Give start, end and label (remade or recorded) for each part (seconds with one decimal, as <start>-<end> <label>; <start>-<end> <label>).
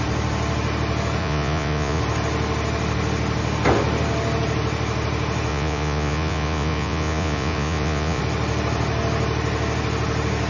0.0-1.2 recorded; 1.2-2.0 remade; 2.0-5.5 recorded; 5.5-8.2 remade; 8.2-10.5 recorded